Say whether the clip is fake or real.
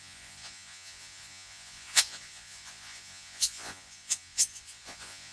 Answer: fake